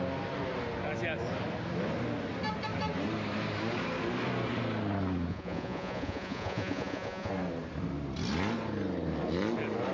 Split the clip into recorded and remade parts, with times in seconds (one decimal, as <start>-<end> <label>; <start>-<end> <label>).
0.0-5.3 recorded; 5.3-7.3 remade; 7.3-9.9 recorded